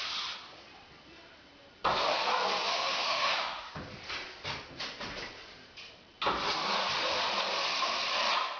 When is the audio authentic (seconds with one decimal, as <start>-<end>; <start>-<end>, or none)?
0.0-2.7; 3.7-8.6